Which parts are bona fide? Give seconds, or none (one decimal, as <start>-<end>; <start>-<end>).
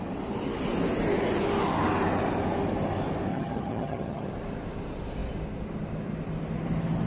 0.0-3.3; 4.3-7.1